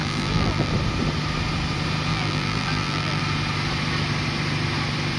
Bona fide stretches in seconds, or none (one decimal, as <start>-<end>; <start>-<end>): 0.7-2.1; 3.2-5.2

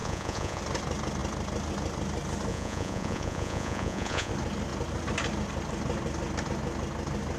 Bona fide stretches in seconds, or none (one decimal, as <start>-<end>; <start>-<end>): 0.6-2.5; 4.3-7.4

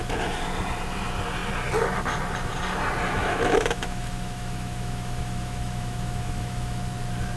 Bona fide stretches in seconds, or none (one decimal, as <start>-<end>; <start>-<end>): 0.0-3.2; 6.8-7.4

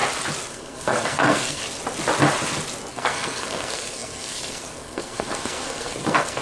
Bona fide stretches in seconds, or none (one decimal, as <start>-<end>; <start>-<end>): 0.0-0.5; 1.6-2.9

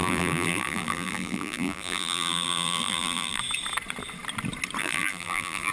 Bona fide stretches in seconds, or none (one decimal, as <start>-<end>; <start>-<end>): 3.4-4.8